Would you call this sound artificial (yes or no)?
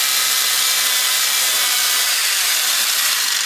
no